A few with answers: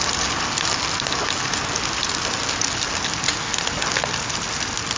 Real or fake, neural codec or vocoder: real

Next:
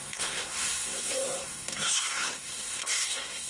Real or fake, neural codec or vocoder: fake, codec, SNAC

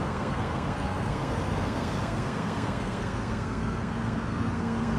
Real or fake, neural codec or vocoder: fake, codec, SNAC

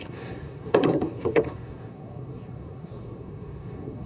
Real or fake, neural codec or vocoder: fake, codec, SNAC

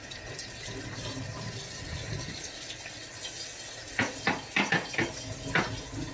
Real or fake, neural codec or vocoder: real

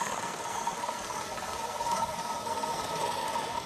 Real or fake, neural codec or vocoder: fake, codec, SNAC